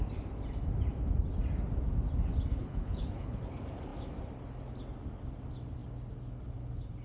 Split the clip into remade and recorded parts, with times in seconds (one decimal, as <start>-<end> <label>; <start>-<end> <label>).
0.0-2.6 recorded; 2.6-3.5 remade; 3.5-7.0 recorded